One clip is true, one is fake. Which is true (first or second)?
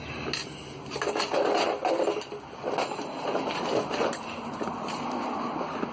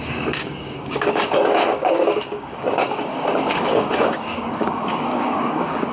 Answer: first